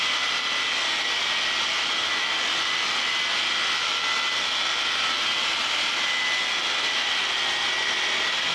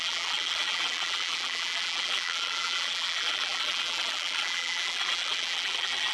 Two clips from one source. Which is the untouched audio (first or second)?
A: first